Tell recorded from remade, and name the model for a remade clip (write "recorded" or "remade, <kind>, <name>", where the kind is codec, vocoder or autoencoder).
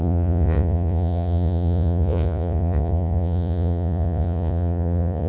remade, vocoder, Vocos